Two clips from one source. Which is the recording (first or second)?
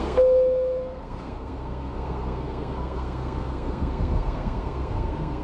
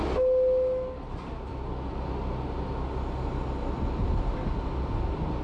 second